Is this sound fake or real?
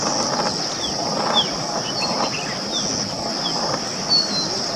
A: real